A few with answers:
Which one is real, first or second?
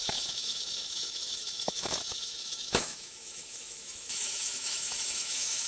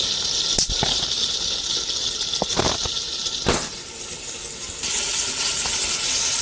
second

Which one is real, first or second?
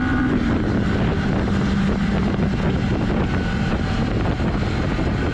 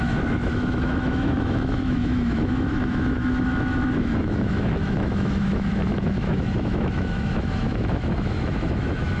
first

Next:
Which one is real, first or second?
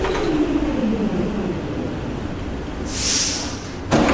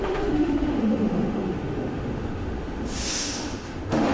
first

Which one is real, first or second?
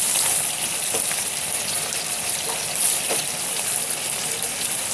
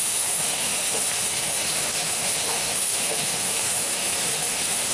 first